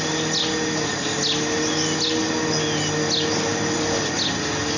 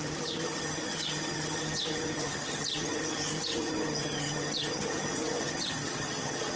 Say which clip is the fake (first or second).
second